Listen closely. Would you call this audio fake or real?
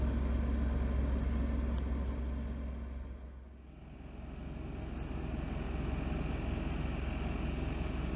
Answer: real